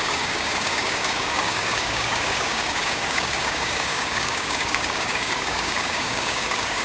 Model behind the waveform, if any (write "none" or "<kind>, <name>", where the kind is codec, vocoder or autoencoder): codec, DAC